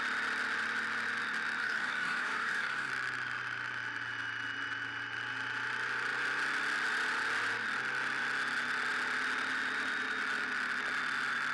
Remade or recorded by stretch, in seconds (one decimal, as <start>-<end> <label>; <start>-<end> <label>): 0.0-1.6 recorded; 1.6-2.9 remade; 2.9-11.5 recorded